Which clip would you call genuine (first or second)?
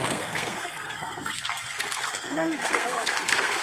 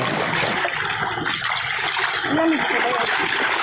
second